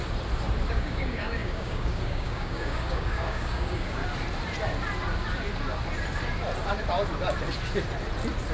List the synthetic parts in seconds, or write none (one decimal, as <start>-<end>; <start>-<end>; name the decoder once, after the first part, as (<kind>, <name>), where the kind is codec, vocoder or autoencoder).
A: 0.7-4.0 (codec, DAC)